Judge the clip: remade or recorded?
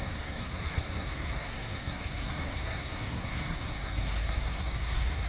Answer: remade